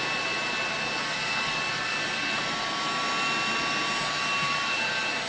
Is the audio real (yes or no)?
yes